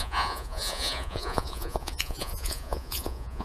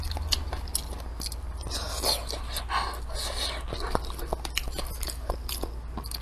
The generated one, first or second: first